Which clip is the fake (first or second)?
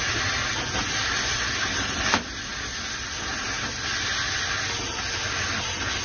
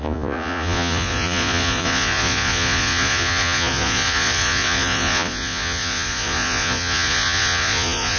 second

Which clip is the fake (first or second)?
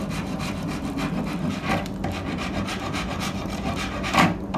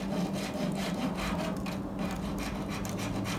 first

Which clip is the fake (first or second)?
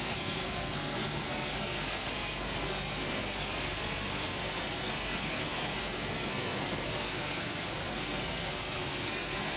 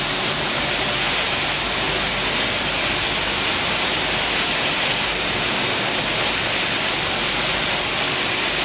first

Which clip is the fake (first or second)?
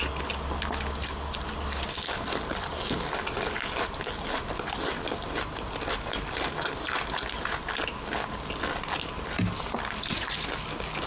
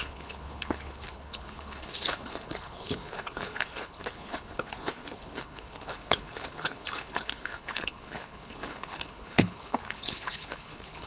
second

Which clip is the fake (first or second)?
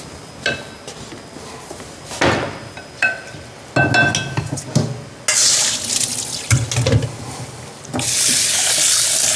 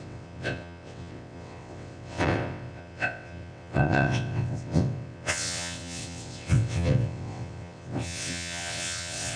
second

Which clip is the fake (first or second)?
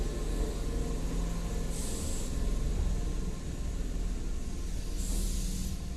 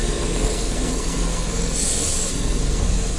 second